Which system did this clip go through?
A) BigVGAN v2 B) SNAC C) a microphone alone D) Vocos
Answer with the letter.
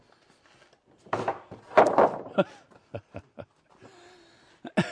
C